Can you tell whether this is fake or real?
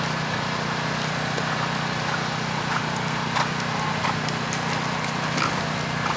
real